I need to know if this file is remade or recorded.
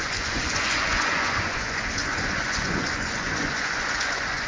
remade